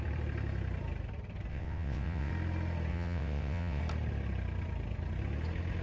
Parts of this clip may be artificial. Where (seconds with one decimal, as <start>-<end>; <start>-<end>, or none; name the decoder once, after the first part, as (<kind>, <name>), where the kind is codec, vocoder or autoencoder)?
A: 1.5-2.3 (vocoder, WaveNeXt); 2.9-3.8